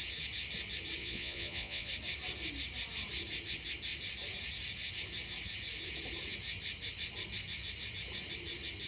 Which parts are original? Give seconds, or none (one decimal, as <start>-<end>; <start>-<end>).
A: 0.0-1.0; 1.9-8.9